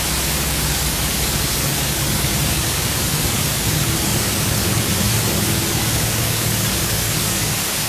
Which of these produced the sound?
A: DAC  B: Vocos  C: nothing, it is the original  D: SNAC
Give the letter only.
A